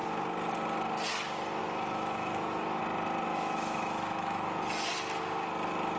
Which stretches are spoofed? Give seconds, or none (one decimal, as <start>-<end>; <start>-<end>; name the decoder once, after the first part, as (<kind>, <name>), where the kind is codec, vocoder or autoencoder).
1.6-2.8 (autoencoder, DAC-VAE); 3.3-4.6